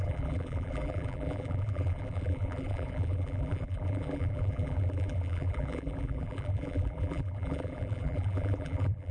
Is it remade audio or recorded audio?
remade